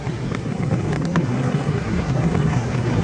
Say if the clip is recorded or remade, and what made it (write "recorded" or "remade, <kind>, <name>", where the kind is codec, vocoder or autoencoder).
remade, codec, SNAC